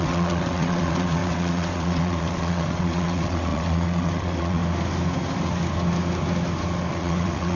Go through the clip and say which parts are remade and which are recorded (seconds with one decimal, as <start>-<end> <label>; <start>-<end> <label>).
0.0-4.6 remade; 4.6-6.9 recorded; 6.9-7.6 remade